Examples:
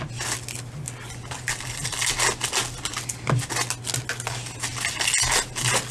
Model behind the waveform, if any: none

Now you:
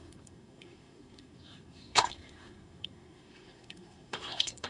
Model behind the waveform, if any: codec, SNAC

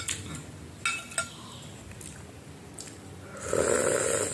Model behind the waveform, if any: none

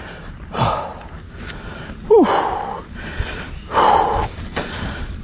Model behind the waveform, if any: none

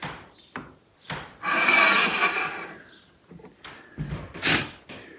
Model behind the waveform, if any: none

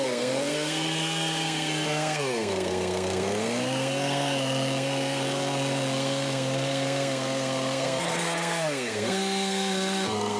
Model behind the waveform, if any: codec, SNAC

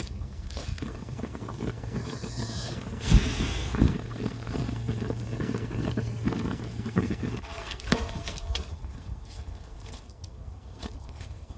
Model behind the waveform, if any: codec, SNAC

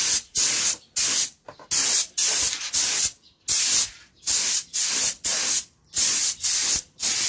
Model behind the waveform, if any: none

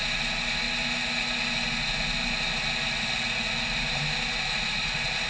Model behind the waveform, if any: none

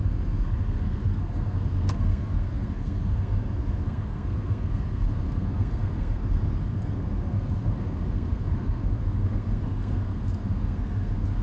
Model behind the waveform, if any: codec, SNAC